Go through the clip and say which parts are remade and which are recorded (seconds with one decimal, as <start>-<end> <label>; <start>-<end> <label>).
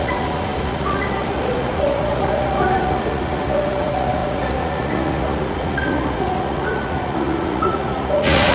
0.0-8.5 remade